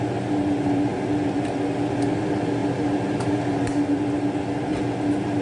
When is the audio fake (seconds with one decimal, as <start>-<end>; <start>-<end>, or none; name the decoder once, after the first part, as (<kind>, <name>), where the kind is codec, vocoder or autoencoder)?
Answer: none